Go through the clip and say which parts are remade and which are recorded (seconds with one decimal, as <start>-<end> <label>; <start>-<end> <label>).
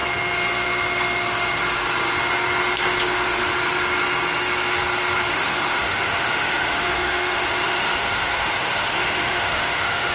0.0-5.3 recorded; 5.3-10.1 remade